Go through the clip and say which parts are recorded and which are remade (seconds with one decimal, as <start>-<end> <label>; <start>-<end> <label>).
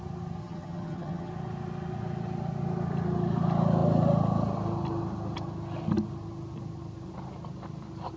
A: 0.0-0.4 recorded; 0.4-1.3 remade; 1.3-8.2 recorded